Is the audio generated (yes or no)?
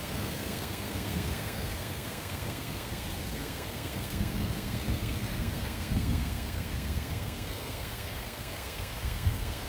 yes